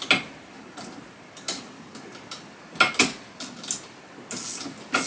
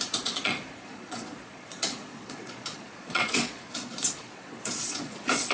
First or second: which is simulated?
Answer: second